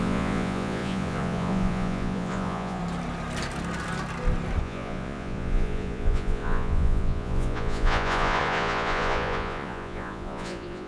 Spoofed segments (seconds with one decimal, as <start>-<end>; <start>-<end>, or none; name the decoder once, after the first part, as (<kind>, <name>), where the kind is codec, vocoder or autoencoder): 0.0-2.8 (vocoder, Vocos); 4.6-10.9